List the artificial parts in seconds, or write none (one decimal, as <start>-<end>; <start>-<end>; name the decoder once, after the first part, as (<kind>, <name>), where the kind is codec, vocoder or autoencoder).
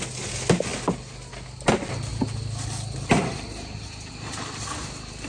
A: none